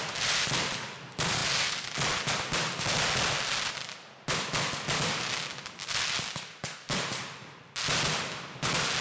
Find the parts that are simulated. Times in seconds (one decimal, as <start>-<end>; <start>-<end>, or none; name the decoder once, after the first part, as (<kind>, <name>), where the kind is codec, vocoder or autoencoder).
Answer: none

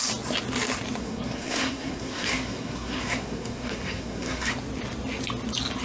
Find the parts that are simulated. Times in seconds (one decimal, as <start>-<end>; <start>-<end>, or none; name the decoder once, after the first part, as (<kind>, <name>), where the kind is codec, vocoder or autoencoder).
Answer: 1.0-4.5 (codec, SNAC)